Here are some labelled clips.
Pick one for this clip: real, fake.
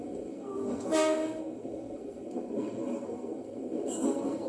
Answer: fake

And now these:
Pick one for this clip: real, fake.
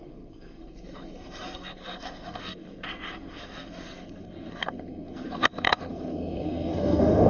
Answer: fake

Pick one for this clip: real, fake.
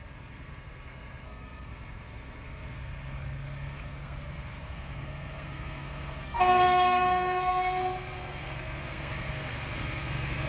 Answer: fake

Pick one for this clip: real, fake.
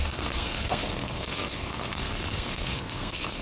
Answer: fake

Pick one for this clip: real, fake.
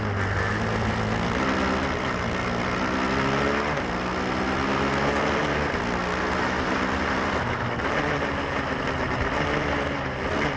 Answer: real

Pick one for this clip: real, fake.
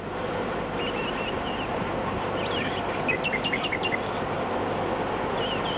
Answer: real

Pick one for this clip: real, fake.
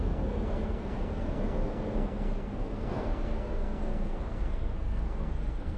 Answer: fake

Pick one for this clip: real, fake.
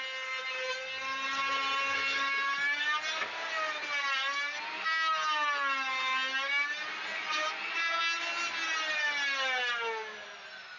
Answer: real